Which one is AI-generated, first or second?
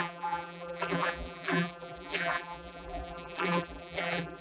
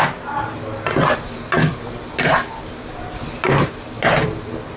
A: first